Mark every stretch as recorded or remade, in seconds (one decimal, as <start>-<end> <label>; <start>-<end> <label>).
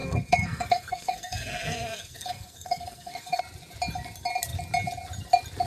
0.0-3.4 remade; 3.4-5.7 recorded